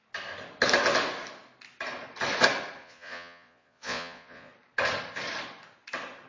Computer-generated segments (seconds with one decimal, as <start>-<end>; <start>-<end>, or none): 2.8-4.5